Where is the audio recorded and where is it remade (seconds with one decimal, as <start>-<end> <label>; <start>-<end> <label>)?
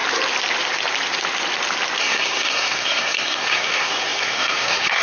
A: 0.0-2.0 recorded; 2.0-5.0 remade